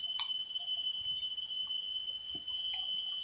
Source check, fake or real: real